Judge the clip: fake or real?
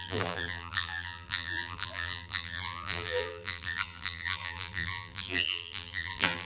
fake